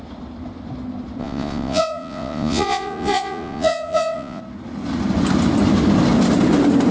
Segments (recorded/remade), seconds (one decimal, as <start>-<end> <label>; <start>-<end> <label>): 0.0-1.2 recorded; 1.2-4.4 remade; 4.4-6.9 recorded